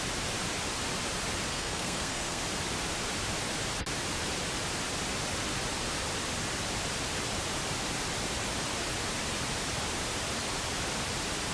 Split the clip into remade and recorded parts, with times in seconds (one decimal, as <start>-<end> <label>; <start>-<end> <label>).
0.0-1.5 recorded; 1.5-2.4 remade; 2.4-11.5 recorded